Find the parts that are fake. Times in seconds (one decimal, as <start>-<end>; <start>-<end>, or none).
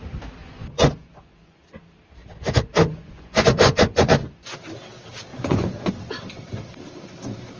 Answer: 0.4-1.6; 2.2-4.6; 5.3-5.9